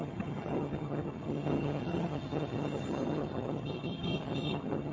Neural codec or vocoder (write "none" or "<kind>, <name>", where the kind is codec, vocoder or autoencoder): vocoder, HiFi-GAN